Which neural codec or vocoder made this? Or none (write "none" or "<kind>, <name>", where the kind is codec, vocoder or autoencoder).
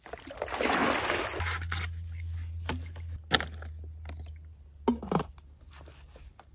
none